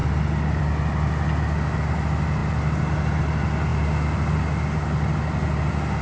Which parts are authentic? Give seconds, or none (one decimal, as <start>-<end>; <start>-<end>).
0.0-6.0